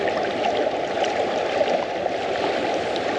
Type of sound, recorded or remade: remade